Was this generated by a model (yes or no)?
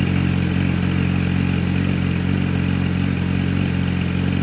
no